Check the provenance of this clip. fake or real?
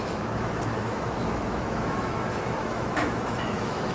fake